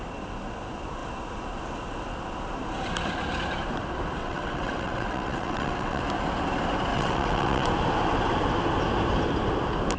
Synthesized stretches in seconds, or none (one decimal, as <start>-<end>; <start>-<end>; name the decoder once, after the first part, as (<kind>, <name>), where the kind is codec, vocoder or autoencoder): 4.2-6.0 (vocoder, WaveNeXt); 6.9-7.7